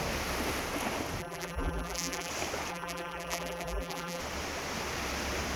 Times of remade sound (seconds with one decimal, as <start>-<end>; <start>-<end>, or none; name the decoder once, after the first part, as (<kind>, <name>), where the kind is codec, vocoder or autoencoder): 1.2-2.3 (vocoder, BigVGAN v2); 2.7-4.2